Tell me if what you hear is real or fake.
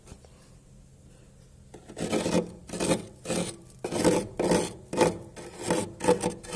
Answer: real